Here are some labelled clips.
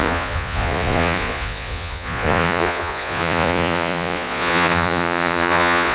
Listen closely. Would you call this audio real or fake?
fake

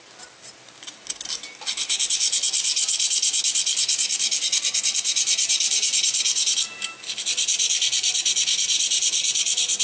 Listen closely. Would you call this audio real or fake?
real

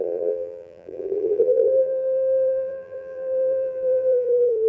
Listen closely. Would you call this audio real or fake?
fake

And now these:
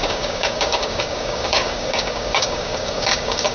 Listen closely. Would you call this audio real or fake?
fake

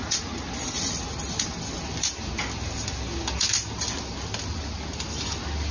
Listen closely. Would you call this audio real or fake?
real